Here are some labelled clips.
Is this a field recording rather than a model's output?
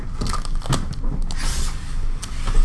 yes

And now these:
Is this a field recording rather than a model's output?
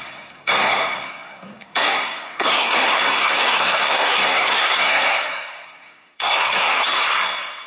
no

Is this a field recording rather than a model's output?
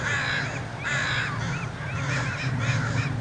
yes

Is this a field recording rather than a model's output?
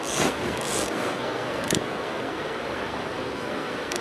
no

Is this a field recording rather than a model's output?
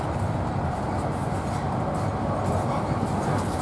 yes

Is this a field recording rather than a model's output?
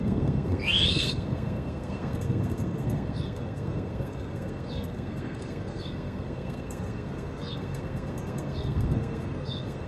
no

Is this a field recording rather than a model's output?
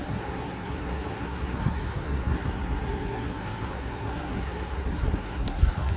no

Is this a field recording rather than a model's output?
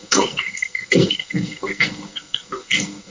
no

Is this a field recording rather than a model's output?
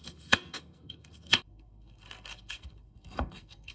no